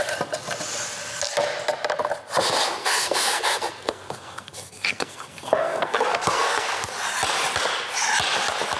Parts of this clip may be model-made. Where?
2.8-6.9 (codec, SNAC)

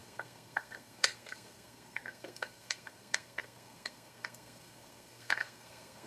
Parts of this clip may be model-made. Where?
0.0-6.1 (codec, SNAC)

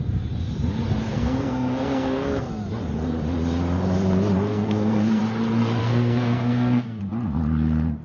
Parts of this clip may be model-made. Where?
1.1-2.5 (codec, SNAC); 4.5-5.2; 5.8-7.0

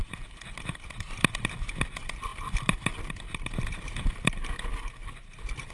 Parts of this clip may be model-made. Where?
none